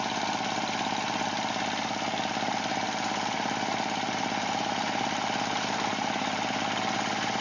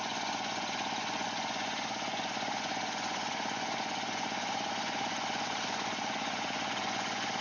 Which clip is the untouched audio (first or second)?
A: first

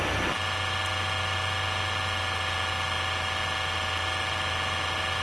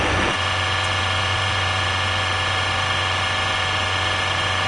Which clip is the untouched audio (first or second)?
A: first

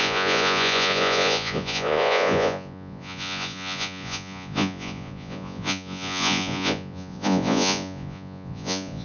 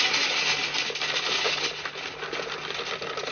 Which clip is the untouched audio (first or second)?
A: second